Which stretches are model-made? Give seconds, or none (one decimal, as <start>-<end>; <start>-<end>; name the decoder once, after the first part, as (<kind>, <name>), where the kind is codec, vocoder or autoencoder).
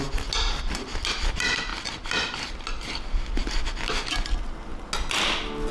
none